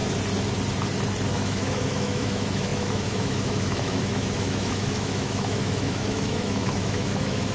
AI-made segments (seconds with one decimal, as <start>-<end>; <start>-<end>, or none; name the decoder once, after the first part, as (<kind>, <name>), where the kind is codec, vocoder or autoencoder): 1.3-7.5 (autoencoder, DAC-VAE)